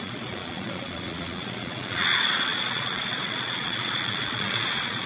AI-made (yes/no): yes